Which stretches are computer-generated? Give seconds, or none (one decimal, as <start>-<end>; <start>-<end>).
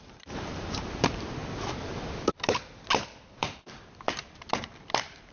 0.0-5.3